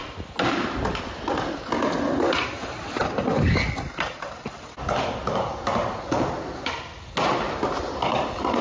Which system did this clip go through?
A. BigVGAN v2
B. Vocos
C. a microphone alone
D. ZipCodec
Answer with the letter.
C